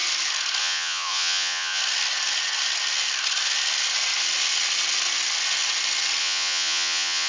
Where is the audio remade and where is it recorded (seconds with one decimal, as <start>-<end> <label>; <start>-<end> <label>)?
0.0-0.6 recorded; 0.6-1.8 remade; 1.8-6.2 recorded; 6.2-7.3 remade

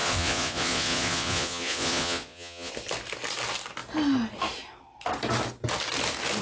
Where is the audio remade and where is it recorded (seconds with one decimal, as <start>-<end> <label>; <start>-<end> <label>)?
0.0-2.7 remade; 2.7-6.4 recorded

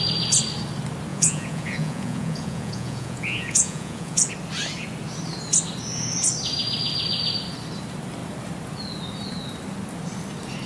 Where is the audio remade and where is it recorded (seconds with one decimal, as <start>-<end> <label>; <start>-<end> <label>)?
0.0-1.1 recorded; 1.1-4.3 remade; 4.3-10.7 recorded

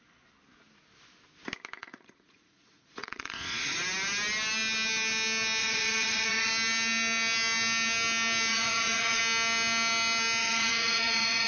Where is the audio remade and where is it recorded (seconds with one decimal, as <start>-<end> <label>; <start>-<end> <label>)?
0.0-1.8 recorded; 1.8-3.8 remade; 3.8-5.6 recorded; 5.6-6.5 remade; 6.5-8.5 recorded; 8.5-9.2 remade; 9.2-10.4 recorded; 10.4-11.5 remade